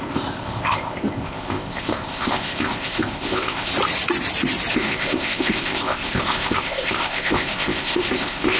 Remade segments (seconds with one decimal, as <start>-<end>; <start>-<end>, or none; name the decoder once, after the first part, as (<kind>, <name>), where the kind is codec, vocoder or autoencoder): 0.0-3.7 (codec, ZipCodec); 4.7-8.6